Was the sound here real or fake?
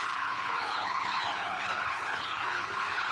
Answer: fake